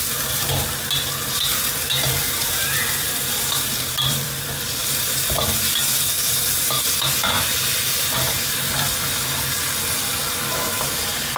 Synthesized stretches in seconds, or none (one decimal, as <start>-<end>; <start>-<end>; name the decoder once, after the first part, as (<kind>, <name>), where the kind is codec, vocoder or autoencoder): 1.6-5.4 (vocoder, BigVGAN v2); 7.2-9.2